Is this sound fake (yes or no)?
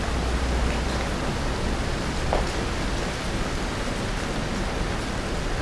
no